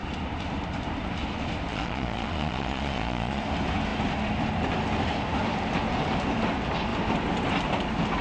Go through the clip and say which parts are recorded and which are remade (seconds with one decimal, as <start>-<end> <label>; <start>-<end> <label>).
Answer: 0.0-1.7 recorded; 1.7-3.4 remade; 3.4-8.2 recorded